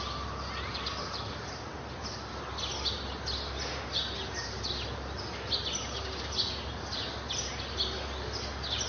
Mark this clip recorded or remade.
recorded